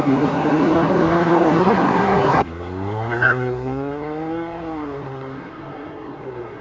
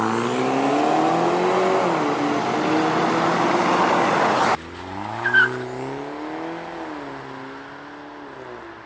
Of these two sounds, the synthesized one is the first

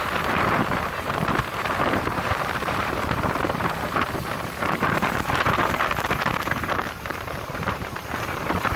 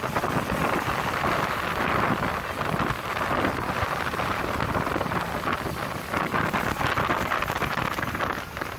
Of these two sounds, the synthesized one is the first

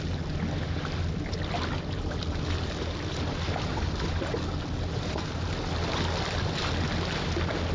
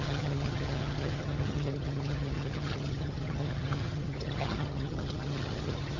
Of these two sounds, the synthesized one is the second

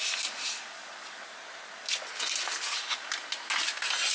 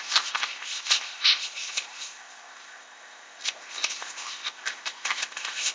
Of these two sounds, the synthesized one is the second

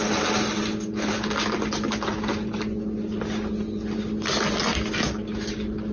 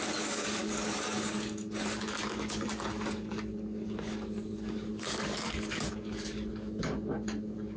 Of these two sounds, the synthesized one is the second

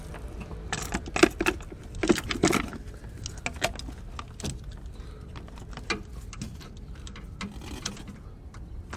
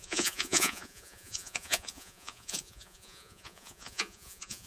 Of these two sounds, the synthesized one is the second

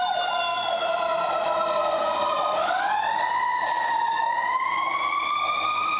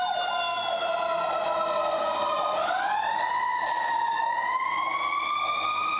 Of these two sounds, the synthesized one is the first